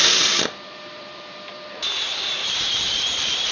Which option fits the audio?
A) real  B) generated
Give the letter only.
B